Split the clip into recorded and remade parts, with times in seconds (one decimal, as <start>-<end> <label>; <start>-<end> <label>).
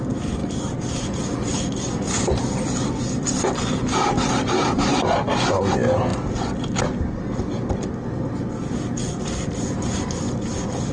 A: 0.0-10.9 recorded